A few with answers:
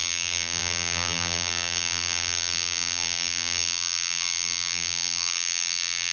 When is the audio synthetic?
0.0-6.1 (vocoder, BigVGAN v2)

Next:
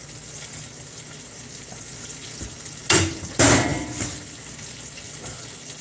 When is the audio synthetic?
none

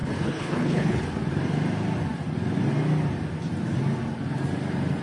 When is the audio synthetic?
0.0-1.0 (codec, HILCodec)

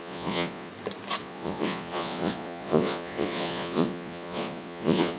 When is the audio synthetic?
0.0-0.7 (vocoder, Vocos); 1.2-5.2

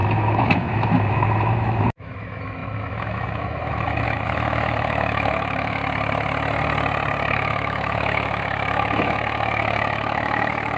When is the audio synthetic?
0.0-5.8 (autoencoder, DAC-VAE); 7.3-10.8